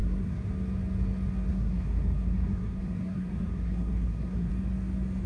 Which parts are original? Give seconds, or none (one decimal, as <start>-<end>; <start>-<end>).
0.5-1.5; 4.5-5.3